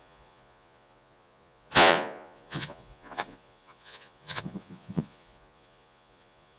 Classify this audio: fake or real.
fake